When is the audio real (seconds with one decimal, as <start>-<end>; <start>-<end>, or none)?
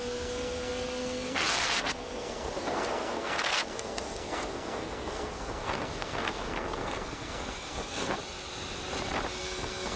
8.2-9.4